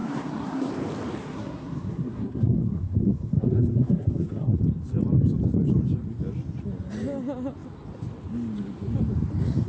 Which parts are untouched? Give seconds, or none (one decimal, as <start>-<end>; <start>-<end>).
0.7-1.2; 4.6-9.7